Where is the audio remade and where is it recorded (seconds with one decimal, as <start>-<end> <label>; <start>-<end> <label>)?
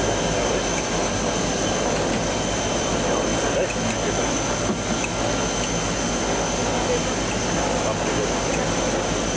0.0-3.3 remade; 3.3-7.4 recorded; 7.4-9.4 remade